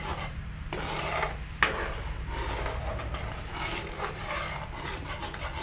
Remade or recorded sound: recorded